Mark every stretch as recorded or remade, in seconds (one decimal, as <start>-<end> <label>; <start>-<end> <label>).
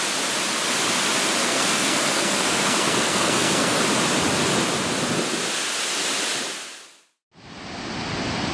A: 0.0-1.4 recorded; 1.4-3.8 remade; 3.8-8.5 recorded